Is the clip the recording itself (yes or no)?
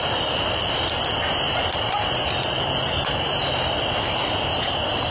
yes